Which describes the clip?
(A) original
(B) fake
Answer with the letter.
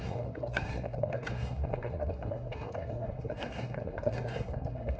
B